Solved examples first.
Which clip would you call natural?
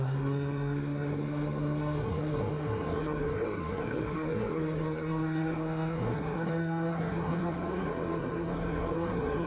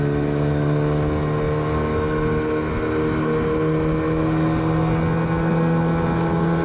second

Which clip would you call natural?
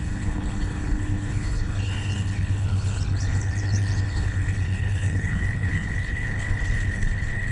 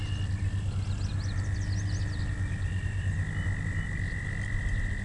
second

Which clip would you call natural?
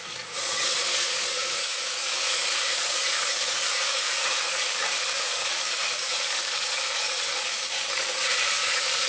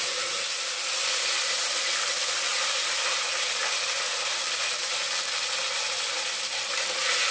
second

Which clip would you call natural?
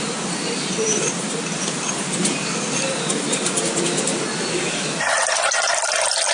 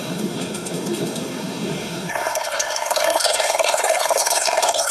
first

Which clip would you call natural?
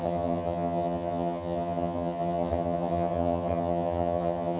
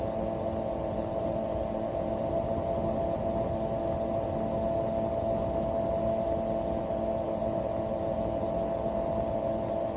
second